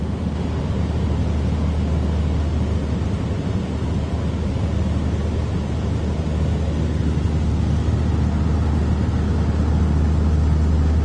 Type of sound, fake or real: real